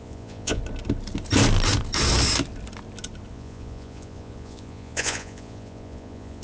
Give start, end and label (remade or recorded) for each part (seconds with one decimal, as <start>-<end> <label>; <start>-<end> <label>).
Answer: 0.0-0.6 remade; 0.6-3.3 recorded; 3.3-6.4 remade